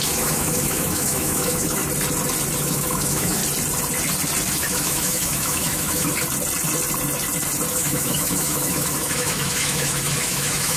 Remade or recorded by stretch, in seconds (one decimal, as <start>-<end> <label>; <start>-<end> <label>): 0.0-1.8 remade; 1.8-2.6 recorded; 2.6-3.4 remade; 3.4-4.5 recorded; 4.5-6.1 remade; 6.1-7.7 recorded; 7.7-10.8 remade